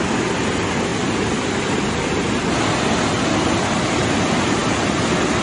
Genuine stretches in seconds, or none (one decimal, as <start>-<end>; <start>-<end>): 0.0-5.4